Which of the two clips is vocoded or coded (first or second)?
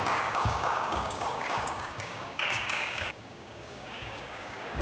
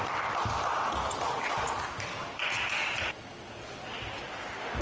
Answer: first